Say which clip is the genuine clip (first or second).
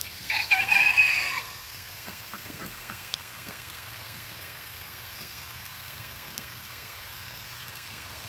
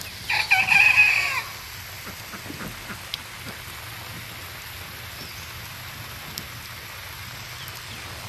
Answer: second